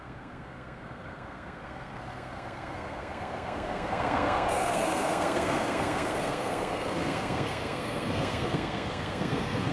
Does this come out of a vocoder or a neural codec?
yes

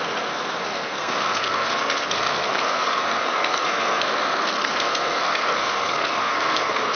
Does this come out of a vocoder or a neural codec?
yes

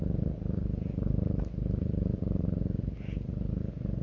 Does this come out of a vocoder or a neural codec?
no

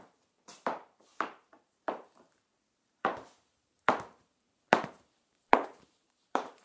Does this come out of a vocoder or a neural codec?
yes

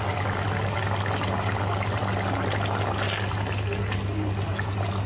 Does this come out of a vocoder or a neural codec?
no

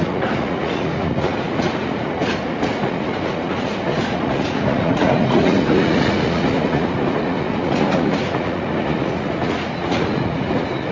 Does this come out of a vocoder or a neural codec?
yes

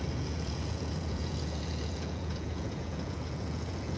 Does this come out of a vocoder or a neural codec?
yes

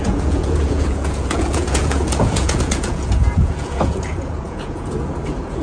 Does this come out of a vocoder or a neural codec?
yes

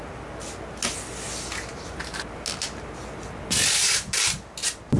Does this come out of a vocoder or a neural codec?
no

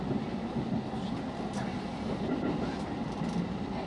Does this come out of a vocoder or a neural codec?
no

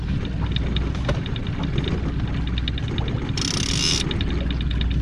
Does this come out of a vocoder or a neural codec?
no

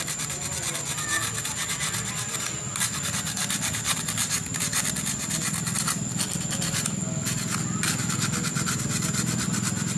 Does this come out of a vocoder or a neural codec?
no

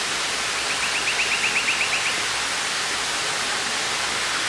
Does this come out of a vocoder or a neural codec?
no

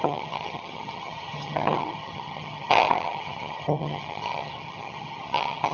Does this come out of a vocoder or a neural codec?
yes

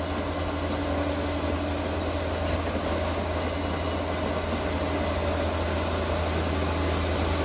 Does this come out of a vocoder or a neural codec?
no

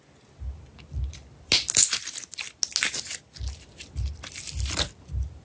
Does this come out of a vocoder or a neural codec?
no